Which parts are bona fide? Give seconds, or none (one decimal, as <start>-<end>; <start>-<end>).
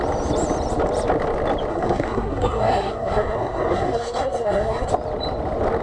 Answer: 0.0-1.7; 4.9-5.8